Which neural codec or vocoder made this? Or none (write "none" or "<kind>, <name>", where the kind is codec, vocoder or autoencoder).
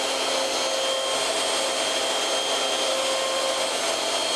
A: none